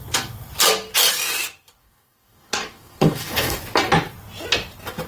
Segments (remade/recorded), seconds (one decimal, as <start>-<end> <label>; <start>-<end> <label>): 0.0-1.8 recorded; 1.8-3.6 remade; 3.6-5.1 recorded